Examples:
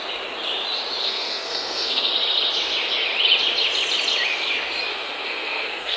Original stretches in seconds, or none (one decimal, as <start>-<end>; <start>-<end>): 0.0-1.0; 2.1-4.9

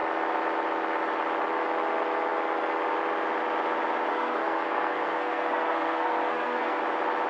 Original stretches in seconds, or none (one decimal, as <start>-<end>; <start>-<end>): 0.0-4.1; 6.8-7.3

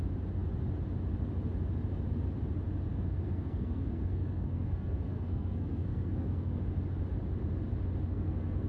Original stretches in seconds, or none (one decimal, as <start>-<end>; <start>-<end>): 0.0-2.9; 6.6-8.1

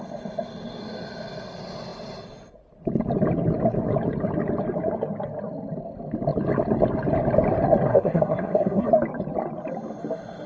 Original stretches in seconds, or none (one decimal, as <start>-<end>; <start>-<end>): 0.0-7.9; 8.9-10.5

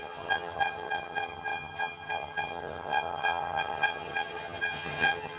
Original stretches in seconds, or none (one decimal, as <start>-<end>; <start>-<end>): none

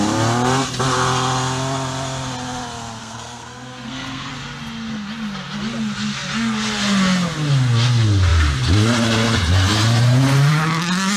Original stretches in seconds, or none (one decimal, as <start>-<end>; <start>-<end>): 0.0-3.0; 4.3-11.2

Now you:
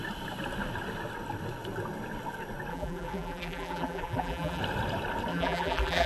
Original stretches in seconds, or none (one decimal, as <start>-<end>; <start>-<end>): 0.0-2.7; 4.6-5.3